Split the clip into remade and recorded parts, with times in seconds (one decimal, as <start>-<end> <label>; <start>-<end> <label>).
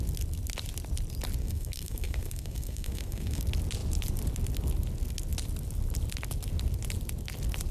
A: 0.0-1.4 recorded; 1.4-3.4 remade; 3.4-7.7 recorded